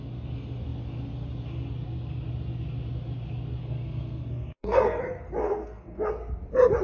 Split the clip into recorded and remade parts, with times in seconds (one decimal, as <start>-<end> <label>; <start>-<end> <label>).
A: 0.0-3.6 recorded; 3.6-5.0 remade; 5.0-5.4 recorded; 5.4-6.1 remade; 6.1-6.8 recorded